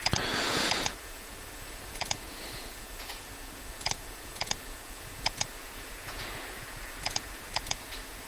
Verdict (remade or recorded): remade